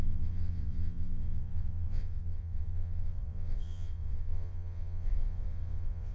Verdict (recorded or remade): remade